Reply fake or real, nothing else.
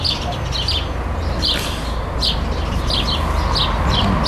real